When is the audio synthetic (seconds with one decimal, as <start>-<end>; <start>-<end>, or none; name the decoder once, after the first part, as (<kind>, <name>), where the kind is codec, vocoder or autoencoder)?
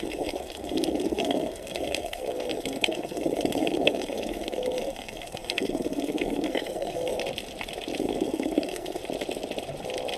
0.0-7.2 (codec, SNAC); 8.0-9.0